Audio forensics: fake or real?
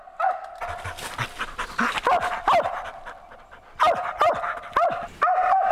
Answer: real